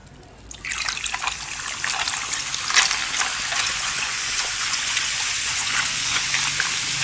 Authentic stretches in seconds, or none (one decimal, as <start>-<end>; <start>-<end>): 0.0-3.5; 6.3-7.0